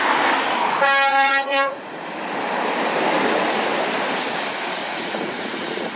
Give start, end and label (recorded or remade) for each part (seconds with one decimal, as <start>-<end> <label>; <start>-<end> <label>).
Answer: 0.0-1.1 recorded; 1.1-1.9 remade; 1.9-4.8 recorded; 4.8-6.0 remade